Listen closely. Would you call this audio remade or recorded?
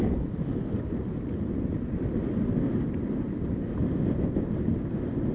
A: recorded